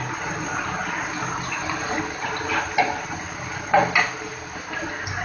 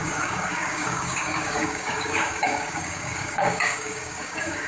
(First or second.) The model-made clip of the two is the second